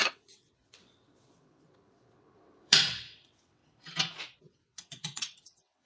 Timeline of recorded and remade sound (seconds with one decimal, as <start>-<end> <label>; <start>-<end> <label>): 0.0-3.6 remade; 3.6-4.4 recorded; 4.4-5.9 remade